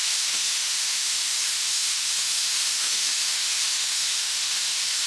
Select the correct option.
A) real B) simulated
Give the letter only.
B